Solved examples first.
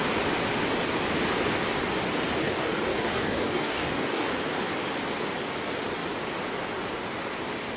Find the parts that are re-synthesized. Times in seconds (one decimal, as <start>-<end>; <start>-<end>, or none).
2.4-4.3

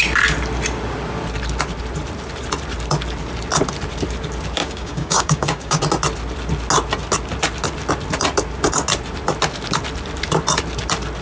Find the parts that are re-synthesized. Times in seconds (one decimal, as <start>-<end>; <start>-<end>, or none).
4.6-5.8

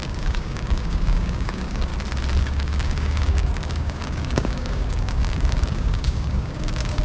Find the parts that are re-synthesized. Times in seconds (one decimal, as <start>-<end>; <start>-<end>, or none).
0.0-1.9; 2.4-7.0

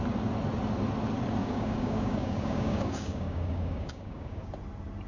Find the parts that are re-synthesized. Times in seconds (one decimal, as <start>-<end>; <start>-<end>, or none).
1.4-4.5